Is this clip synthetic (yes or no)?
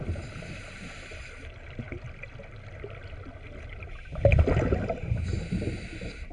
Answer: no